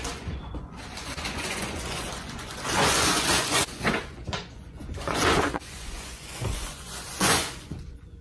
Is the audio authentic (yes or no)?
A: no